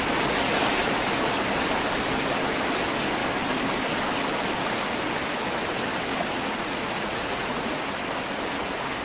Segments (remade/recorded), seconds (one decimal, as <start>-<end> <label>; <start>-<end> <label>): 0.0-6.1 recorded; 6.1-7.9 remade; 7.9-9.0 recorded